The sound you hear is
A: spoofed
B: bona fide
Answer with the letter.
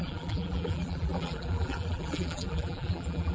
A